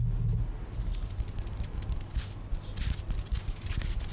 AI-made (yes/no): no